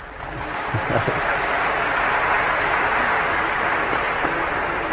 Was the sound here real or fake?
real